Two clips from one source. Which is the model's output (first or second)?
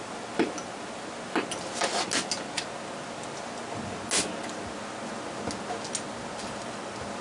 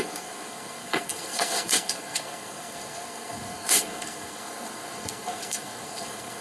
second